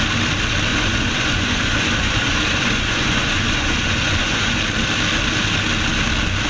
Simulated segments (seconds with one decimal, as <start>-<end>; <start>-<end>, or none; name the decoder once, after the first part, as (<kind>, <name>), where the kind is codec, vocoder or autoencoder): 0.7-4.6 (vocoder, Vocos)